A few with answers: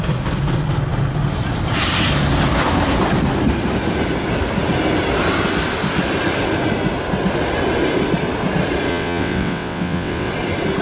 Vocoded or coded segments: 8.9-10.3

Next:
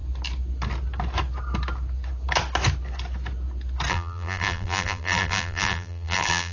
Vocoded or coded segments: 3.9-6.5

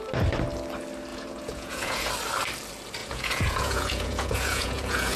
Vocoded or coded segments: 1.1-2.1; 3.0-5.2

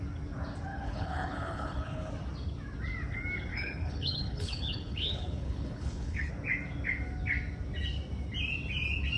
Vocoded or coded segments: 0.7-2.1; 3.5-6.3